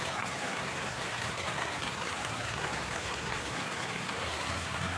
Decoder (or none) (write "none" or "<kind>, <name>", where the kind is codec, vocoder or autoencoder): codec, SNAC